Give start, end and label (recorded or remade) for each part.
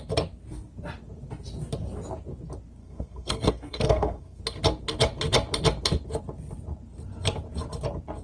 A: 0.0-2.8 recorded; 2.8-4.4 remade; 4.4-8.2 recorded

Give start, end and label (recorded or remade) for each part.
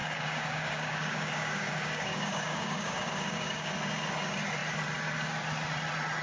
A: 0.0-3.7 remade; 3.7-6.2 recorded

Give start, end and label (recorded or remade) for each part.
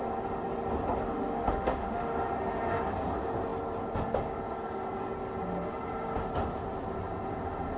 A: 0.0-1.1 recorded; 1.1-2.1 remade; 2.1-7.8 recorded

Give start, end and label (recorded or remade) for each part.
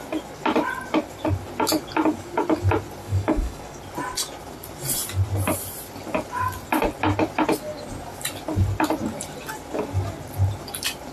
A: 0.0-3.0 recorded; 3.0-3.8 remade; 3.8-11.1 recorded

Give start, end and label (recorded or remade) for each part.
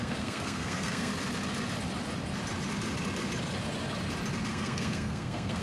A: 0.0-1.1 remade; 1.1-4.5 recorded; 4.5-5.6 remade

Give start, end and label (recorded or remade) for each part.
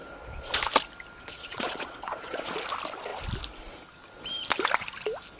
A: 0.0-0.6 remade; 0.6-1.2 recorded; 1.2-2.5 remade; 2.5-5.4 recorded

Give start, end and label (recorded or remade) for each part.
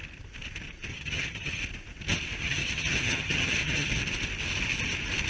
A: 0.0-0.9 recorded; 0.9-1.6 remade; 1.6-2.4 recorded; 2.4-3.9 remade; 3.9-5.3 recorded